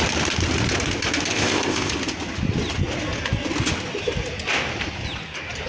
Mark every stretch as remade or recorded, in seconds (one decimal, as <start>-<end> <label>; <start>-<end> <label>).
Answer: 0.0-1.3 recorded; 1.3-1.9 remade; 1.9-5.7 recorded